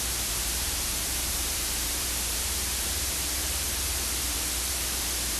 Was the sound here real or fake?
fake